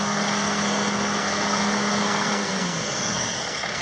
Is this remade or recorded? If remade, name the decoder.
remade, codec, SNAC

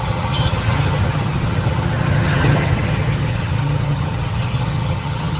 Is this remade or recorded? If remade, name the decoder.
remade, vocoder, HiFi-GAN